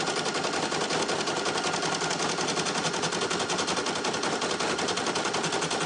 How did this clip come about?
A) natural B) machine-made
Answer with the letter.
A